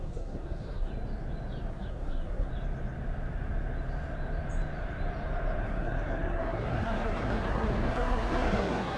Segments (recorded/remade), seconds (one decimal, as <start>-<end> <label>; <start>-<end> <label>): 0.0-0.9 remade; 0.9-1.7 recorded; 1.7-2.5 remade; 2.5-5.6 recorded; 5.6-9.0 remade